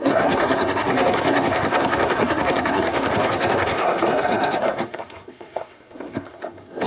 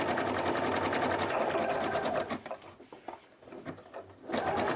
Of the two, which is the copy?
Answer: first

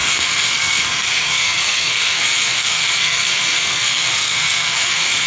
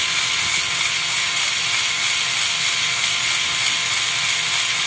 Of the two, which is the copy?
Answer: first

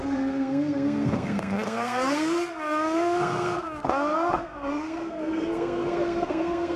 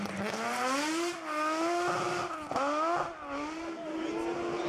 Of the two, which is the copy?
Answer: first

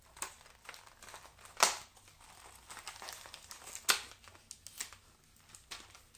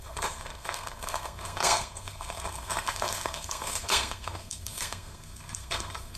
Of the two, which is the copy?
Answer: second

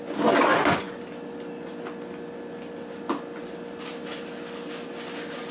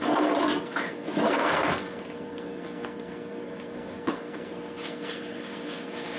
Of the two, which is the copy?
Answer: second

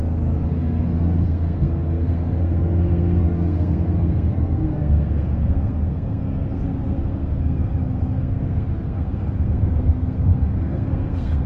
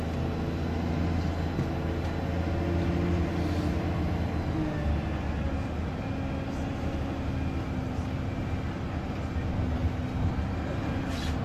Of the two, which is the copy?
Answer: first